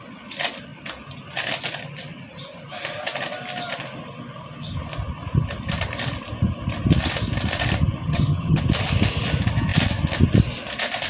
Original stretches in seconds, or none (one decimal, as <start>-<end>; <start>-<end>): 0.0-8.0; 8.6-11.1